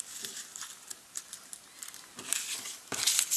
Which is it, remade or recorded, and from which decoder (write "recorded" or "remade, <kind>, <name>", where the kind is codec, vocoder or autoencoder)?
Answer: remade, vocoder, BigVGAN v2